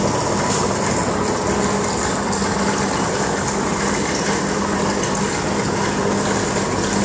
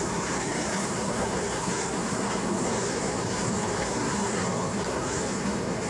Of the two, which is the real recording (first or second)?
first